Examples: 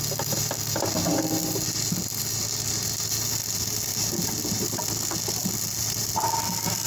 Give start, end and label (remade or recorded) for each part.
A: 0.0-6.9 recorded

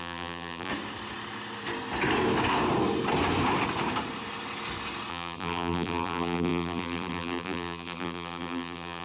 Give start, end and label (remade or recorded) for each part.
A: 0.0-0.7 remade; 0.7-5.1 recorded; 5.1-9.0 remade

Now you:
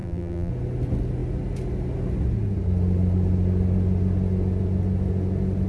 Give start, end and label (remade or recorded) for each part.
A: 0.0-0.5 remade; 0.5-5.7 recorded

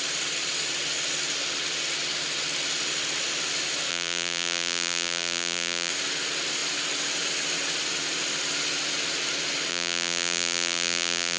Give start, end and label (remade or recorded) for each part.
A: 0.0-3.9 recorded; 3.9-5.9 remade; 5.9-9.7 recorded; 9.7-11.4 remade